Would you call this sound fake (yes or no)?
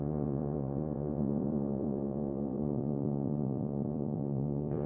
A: yes